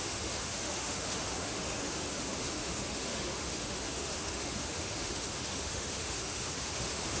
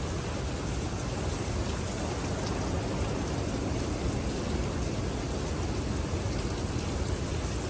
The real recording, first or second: second